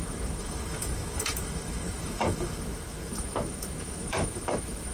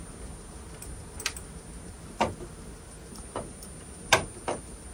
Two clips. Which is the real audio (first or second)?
second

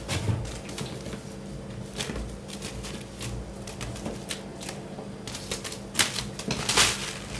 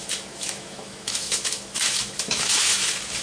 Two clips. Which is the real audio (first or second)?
first